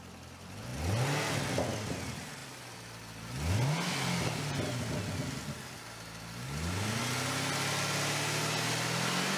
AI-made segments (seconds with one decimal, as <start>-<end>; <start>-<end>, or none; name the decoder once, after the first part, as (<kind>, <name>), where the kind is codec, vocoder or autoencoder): none